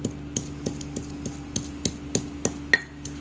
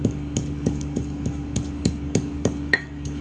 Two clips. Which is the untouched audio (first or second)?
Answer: first